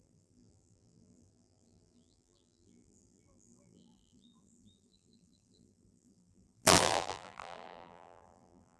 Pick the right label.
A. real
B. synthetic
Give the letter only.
B